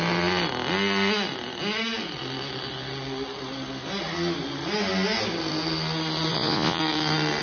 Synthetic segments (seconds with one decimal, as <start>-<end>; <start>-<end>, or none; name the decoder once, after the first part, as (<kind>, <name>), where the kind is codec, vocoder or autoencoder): 6.3-6.8 (vocoder, Vocos)